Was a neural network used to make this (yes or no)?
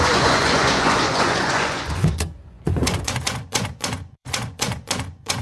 yes